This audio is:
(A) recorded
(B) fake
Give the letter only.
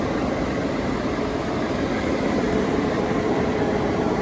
B